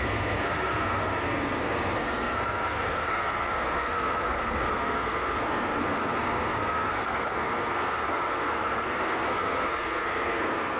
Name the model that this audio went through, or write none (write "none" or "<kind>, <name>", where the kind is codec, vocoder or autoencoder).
codec, SNAC